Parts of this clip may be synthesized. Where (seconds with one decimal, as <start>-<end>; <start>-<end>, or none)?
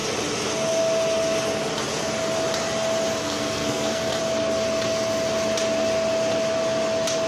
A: 3.2-4.2